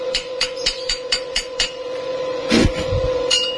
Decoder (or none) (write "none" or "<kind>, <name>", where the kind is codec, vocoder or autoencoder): vocoder, Vocos